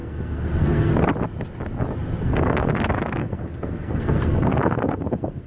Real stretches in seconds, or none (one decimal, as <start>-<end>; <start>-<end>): 0.9-2.2; 2.7-3.2

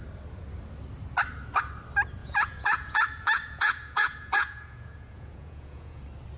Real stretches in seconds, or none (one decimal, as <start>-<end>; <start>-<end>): 0.0-2.2; 6.0-6.4

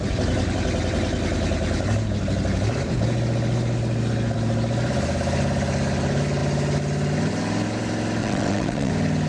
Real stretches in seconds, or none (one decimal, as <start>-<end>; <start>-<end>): 0.0-8.2; 8.9-9.3

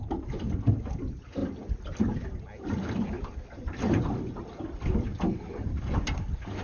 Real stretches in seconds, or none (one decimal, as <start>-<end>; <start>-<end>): 0.0-6.6

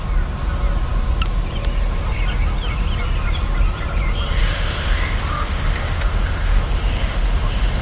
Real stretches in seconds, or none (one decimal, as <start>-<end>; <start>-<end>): 0.0-4.4